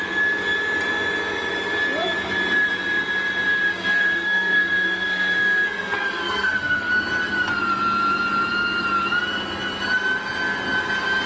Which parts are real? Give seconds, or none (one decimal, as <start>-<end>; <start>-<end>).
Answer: 0.0-3.7; 6.9-11.3

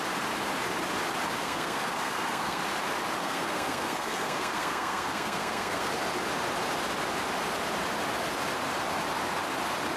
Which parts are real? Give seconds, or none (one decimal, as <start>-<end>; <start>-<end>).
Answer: 0.0-1.4; 2.6-3.2; 5.9-10.0

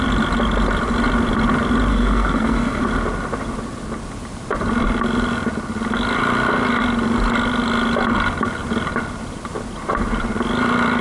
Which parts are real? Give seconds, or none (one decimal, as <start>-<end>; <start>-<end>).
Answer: 0.0-1.9; 2.8-11.0